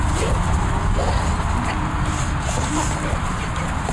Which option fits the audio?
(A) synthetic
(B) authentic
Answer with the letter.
B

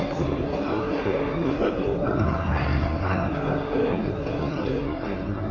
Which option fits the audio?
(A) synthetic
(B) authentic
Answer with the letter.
A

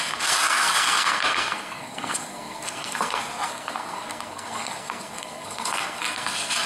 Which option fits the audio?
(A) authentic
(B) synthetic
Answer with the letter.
B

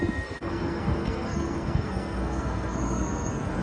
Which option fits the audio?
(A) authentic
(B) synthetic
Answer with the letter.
B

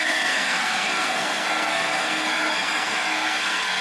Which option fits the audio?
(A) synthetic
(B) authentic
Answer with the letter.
A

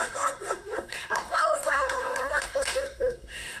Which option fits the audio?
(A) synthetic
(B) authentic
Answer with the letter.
A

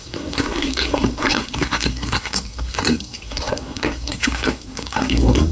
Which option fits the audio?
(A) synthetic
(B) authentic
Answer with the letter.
A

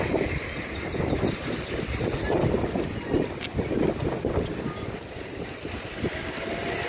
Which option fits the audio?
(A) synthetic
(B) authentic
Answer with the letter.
B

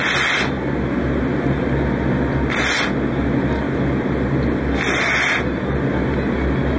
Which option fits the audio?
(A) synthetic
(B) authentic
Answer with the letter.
B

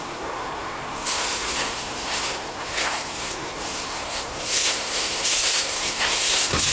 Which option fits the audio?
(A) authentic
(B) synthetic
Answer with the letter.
B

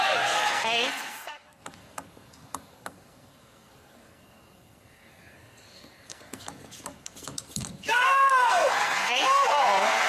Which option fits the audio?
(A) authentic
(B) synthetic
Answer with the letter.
B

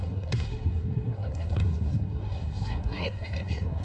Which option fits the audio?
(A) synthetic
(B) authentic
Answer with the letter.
A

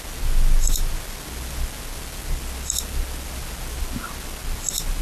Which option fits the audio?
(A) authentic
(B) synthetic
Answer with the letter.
A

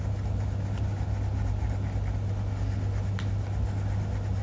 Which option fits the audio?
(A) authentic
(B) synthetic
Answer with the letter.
A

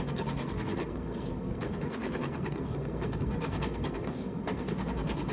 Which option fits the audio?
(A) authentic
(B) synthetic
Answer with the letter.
B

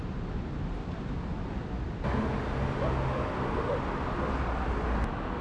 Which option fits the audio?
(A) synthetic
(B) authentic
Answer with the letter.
B